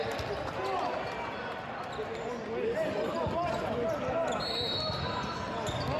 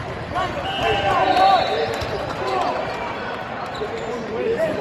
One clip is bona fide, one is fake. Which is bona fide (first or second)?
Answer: first